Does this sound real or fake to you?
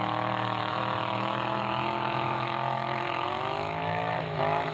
fake